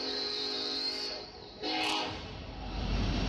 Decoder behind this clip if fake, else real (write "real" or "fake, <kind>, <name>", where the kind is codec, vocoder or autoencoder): fake, vocoder, BigVGAN v2